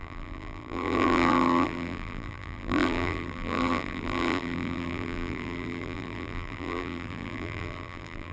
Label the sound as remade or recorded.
remade